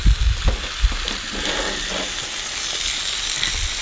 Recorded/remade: recorded